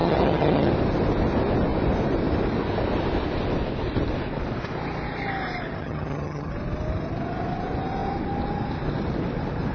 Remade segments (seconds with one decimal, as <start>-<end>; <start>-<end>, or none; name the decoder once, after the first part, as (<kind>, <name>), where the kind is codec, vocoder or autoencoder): 0.0-0.7 (vocoder, HiFi-GAN); 5.8-6.5